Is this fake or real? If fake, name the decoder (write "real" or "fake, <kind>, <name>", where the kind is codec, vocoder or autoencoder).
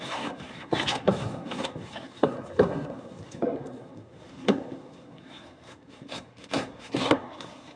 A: fake, codec, SNAC